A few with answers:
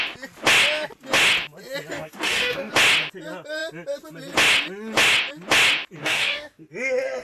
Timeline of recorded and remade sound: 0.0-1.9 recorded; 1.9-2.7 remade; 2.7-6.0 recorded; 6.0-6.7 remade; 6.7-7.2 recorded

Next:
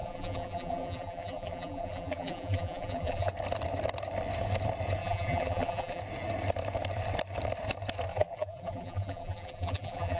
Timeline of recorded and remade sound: 0.0-3.3 remade; 3.3-5.0 recorded; 5.0-6.0 remade; 6.0-8.1 recorded; 8.1-10.2 remade